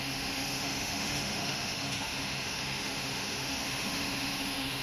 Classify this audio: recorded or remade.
remade